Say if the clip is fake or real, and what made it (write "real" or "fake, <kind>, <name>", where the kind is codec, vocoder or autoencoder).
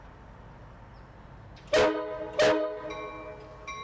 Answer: real